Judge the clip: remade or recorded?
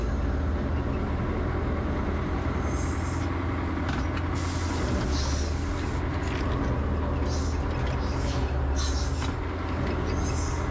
recorded